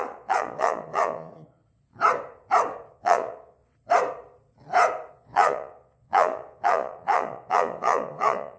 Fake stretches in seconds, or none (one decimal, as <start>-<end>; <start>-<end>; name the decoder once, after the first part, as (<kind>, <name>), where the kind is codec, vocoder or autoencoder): 0.0-1.6 (vocoder, Vocos); 2.9-3.6; 5.1-8.6

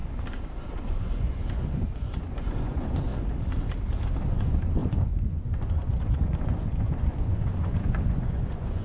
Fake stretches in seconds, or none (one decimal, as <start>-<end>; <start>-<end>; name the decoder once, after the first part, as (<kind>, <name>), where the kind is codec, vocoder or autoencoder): 0.9-3.1 (vocoder, Vocos); 4.3-8.8

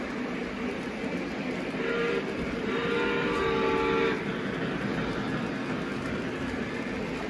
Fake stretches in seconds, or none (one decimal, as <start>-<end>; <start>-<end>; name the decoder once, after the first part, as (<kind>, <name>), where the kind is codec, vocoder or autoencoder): none

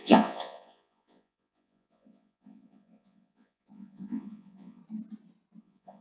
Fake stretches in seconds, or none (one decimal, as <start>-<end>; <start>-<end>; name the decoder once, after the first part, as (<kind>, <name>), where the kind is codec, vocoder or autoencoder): 0.0-4.8 (vocoder, Vocos); 5.6-6.0

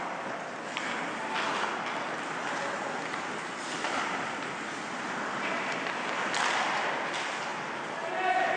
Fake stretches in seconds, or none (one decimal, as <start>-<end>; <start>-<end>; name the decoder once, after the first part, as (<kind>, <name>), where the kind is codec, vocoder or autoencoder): none